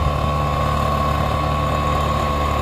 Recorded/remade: recorded